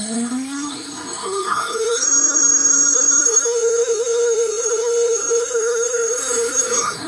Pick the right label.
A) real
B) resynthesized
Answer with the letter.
B